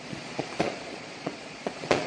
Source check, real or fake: fake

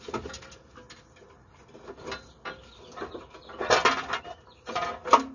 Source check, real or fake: real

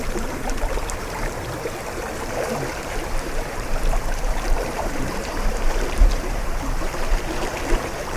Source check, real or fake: fake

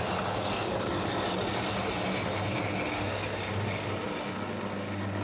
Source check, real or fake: real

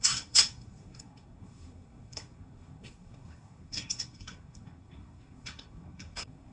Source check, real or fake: fake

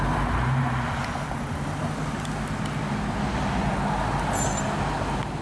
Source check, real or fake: real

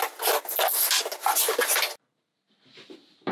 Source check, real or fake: real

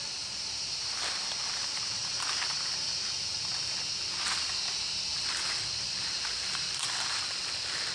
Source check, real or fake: fake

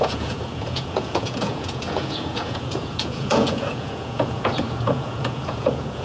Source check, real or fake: fake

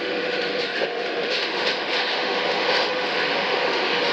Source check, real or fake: fake